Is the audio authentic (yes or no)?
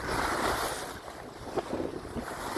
yes